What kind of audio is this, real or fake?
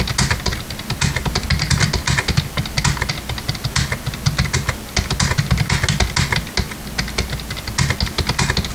real